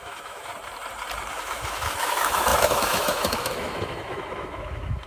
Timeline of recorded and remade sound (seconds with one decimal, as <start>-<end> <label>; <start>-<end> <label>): 0.0-0.5 remade; 0.5-1.3 recorded; 1.3-5.1 remade